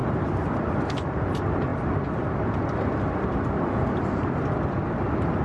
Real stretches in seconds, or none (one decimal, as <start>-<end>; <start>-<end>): 0.0-5.4